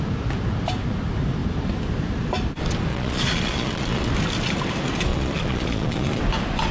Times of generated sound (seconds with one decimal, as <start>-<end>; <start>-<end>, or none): 2.9-4.1; 5.1-6.2